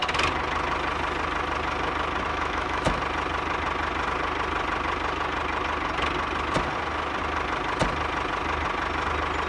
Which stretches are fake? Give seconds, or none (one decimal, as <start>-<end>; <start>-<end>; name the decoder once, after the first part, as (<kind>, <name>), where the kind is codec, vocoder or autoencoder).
2.3-3.0 (autoencoder, DAC-VAE)